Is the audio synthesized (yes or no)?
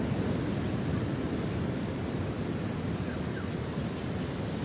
no